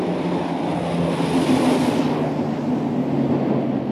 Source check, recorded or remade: recorded